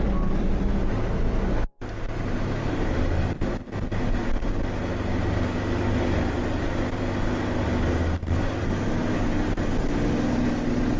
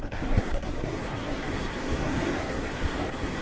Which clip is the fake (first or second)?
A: second